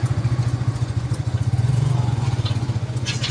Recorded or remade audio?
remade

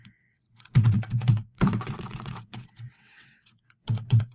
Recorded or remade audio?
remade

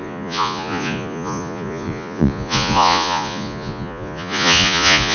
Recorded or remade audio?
remade